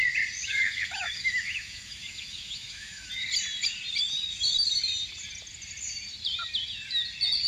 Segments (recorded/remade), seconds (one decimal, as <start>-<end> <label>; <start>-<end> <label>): 0.0-0.4 recorded; 0.4-3.1 remade; 3.1-7.5 recorded